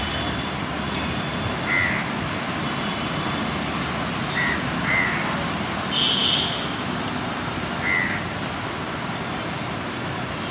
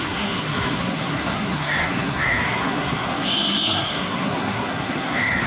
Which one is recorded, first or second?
first